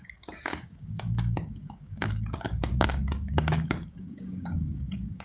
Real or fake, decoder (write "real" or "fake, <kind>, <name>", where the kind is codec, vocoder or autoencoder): fake, codec, DAC